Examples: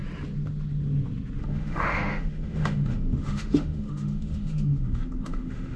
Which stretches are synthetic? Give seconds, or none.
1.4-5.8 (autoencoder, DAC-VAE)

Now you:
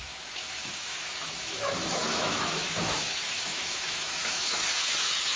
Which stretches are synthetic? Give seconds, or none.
0.0-5.4 (autoencoder, DAC-VAE)

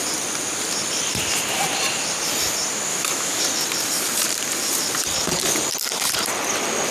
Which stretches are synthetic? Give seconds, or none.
2.9-3.4 (autoencoder, DAC-VAE)

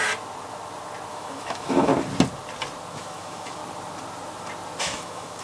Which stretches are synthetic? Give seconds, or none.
1.1-1.9 (autoencoder, DAC-VAE); 2.9-3.6; 4.8-5.4

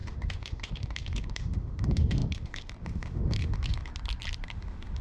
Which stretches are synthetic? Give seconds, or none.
0.0-3.9 (autoencoder, DAC-VAE); 4.5-5.0

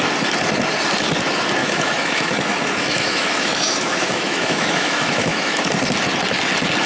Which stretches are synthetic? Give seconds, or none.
1.6-5.7 (autoencoder, DAC-VAE)